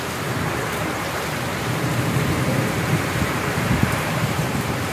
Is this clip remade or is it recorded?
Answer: remade